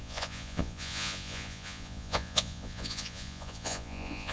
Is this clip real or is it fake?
fake